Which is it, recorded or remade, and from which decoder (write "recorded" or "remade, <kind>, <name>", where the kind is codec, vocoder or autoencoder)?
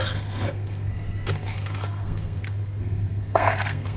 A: remade, codec, SNAC